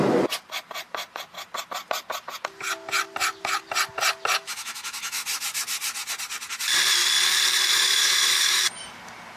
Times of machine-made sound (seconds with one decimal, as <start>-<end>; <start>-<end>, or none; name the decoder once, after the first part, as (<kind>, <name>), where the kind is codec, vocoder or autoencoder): 4.4-5.2 (autoencoder, DAC-VAE); 7.7-8.6